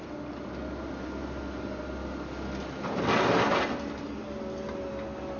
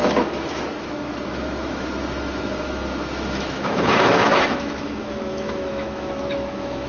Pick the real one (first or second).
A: first